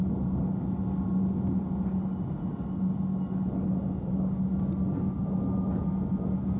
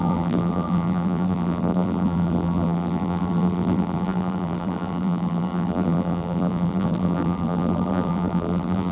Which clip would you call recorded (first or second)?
first